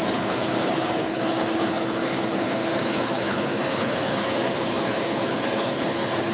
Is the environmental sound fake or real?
fake